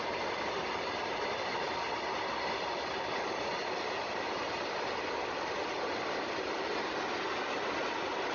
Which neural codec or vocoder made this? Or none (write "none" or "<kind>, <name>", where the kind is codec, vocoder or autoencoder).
none